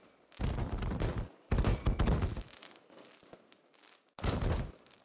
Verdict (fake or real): real